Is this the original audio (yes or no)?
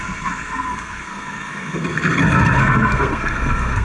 no